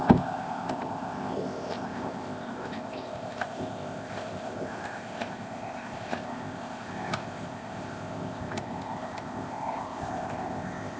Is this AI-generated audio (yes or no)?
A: yes